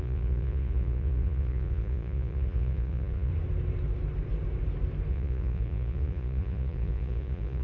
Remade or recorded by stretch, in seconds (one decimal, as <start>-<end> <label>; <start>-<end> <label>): 0.0-3.3 remade; 3.3-5.1 recorded; 5.1-7.6 remade